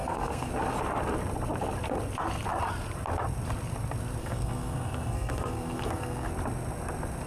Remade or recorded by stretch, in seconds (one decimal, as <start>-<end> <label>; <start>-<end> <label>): 0.0-0.5 remade; 0.5-4.2 recorded; 4.2-6.3 remade; 6.3-7.3 recorded